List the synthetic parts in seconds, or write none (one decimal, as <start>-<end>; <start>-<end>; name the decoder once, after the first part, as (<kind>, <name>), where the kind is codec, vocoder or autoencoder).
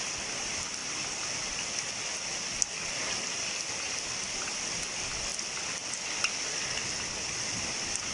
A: none